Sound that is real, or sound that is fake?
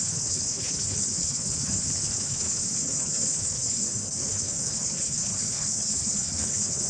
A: fake